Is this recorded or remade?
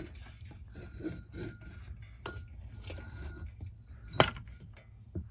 recorded